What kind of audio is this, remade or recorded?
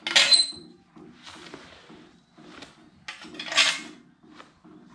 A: recorded